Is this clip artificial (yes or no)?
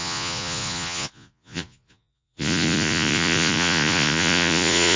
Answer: yes